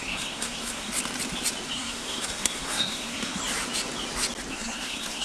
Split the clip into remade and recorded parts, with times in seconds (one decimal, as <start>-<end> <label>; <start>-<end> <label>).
0.0-0.9 remade; 0.9-1.7 recorded; 1.7-3.4 remade; 3.4-4.5 recorded; 4.5-5.2 remade